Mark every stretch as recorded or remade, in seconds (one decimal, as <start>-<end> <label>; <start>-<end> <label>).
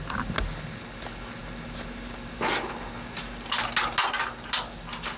0.0-5.2 recorded